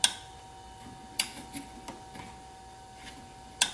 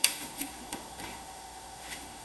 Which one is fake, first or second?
second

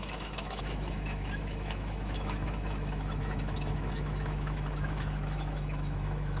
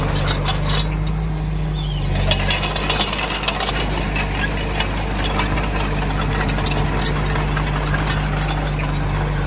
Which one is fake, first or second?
first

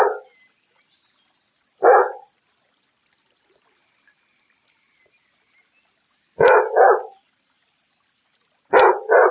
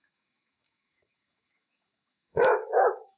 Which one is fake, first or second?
second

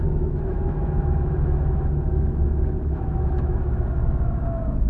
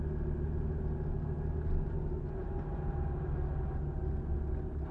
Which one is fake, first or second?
first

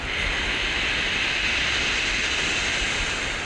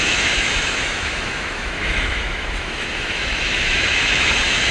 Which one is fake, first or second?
second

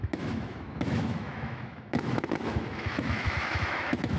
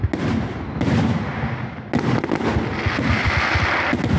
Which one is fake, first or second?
first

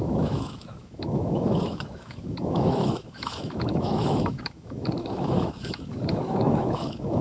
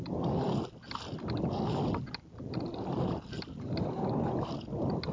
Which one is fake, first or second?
first